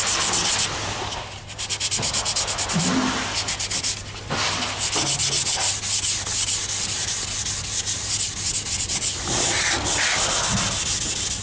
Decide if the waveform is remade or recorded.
recorded